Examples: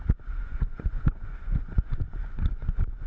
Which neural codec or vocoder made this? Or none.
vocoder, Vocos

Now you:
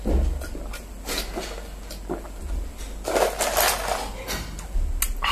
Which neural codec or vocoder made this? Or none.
none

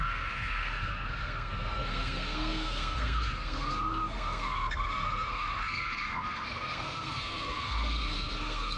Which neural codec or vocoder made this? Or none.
codec, SNAC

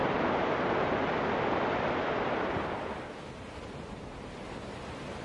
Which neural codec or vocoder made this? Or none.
none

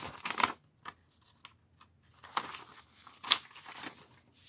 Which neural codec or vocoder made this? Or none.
none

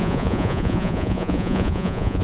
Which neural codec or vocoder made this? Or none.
vocoder, Vocos